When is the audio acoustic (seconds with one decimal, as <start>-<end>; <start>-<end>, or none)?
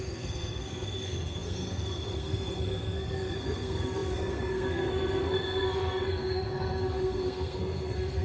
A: none